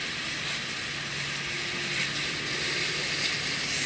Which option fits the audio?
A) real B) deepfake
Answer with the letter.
A